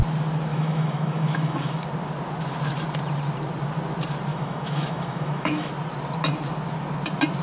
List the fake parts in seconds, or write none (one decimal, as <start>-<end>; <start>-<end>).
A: 0.5-1.8; 4.3-5.7